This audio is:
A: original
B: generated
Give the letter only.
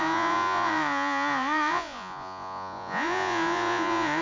B